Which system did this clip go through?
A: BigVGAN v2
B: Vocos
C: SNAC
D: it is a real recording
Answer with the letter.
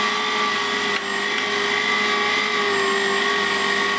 D